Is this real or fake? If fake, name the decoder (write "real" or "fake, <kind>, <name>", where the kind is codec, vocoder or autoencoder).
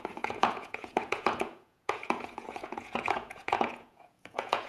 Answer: fake, vocoder, Vocos